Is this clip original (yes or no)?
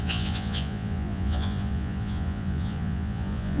no